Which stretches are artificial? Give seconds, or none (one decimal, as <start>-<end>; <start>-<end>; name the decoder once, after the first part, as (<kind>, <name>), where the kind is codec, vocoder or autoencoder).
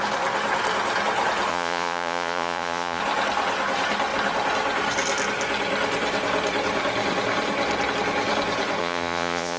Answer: 1.5-3.0 (vocoder, Vocos); 8.8-9.6